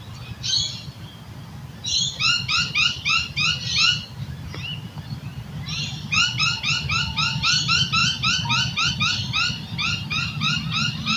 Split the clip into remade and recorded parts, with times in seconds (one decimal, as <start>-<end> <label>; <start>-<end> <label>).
0.0-11.2 recorded